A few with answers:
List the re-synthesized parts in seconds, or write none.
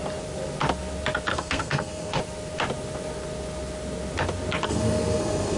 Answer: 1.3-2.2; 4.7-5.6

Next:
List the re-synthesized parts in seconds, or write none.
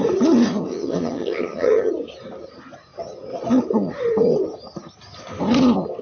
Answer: 0.7-1.9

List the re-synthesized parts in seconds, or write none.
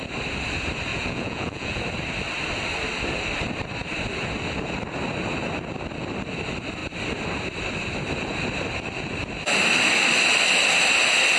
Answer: 0.9-1.8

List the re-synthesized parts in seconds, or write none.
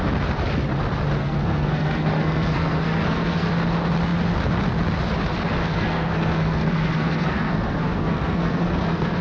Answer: 1.2-3.5; 5.6-9.2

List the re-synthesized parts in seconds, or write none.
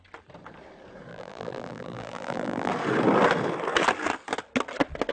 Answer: 1.1-2.7